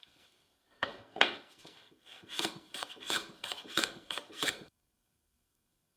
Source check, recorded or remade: remade